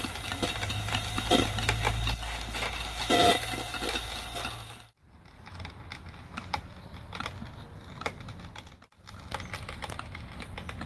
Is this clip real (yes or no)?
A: yes